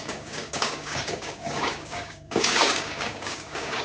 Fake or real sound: fake